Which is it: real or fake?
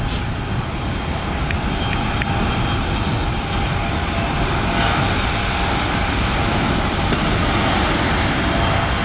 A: real